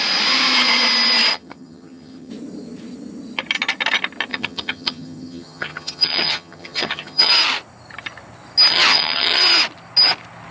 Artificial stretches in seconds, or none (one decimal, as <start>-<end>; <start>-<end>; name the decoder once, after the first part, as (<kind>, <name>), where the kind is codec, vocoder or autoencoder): 1.3-2.3 (vocoder, HiFi-GAN); 4.3-7.3; 8.7-9.4